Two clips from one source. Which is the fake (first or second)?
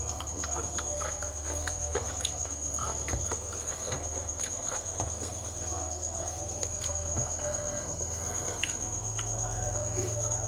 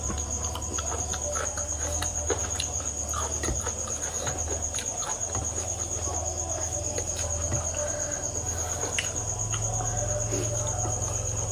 first